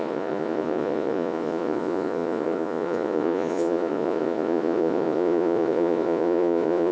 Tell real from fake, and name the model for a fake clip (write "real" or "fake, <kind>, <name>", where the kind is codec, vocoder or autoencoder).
fake, vocoder, Vocos